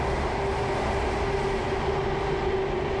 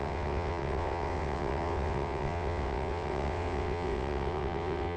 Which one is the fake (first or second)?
second